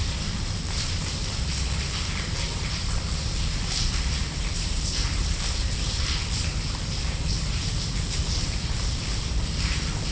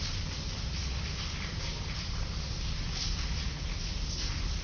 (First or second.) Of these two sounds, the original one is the second